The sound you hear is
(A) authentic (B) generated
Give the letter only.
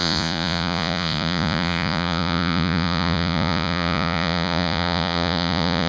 B